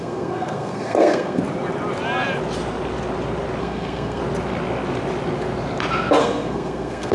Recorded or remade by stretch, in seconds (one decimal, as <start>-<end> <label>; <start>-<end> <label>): 0.0-1.4 remade; 1.4-3.6 recorded; 3.6-4.2 remade; 4.2-6.2 recorded; 6.2-7.1 remade